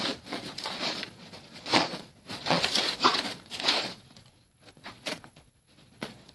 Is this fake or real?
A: fake